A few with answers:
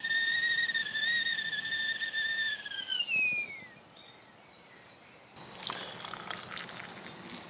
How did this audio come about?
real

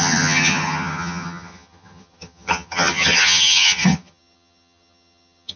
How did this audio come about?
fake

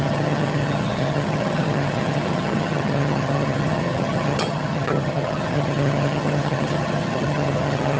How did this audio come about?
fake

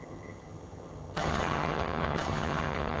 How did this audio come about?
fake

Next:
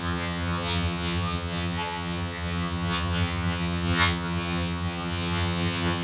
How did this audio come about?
fake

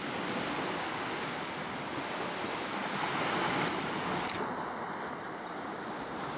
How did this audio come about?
real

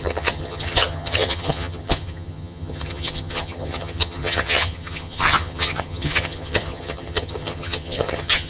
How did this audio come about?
fake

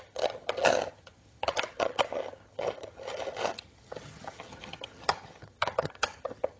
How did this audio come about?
fake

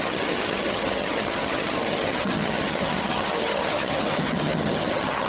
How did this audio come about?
fake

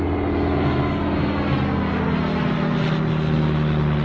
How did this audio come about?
real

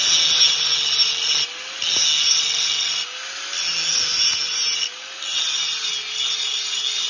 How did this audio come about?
real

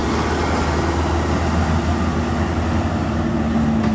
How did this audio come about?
real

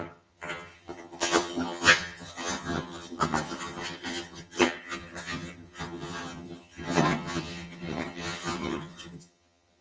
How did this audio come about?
fake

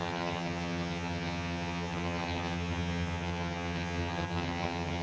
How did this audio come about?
fake